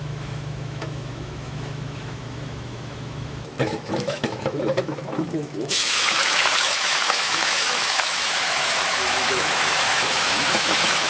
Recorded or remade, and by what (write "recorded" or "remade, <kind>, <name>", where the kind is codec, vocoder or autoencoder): remade, autoencoder, DAC-VAE